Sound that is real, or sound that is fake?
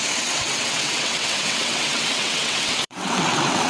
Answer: fake